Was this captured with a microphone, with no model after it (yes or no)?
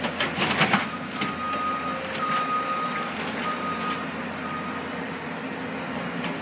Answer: yes